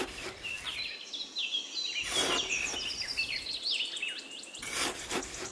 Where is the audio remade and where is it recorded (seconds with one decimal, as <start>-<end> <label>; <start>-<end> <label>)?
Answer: 0.0-5.5 recorded